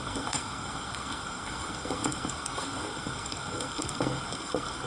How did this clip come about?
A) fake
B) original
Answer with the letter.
A